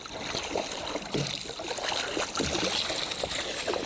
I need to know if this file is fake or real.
real